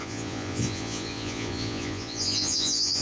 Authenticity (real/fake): fake